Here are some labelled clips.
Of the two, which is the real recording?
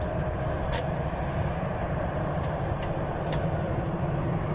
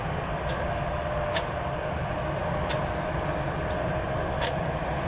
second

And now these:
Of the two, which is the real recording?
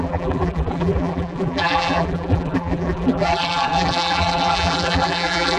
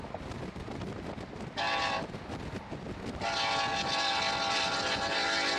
second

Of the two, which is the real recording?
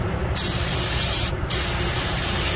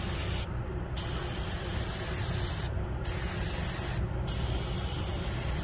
second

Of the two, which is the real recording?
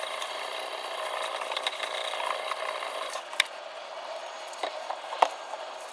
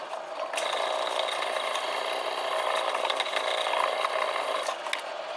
second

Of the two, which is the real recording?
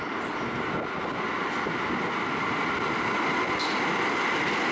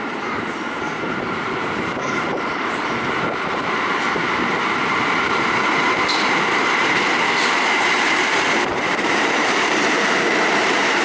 first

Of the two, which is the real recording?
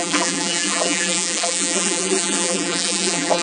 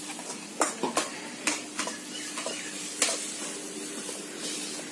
second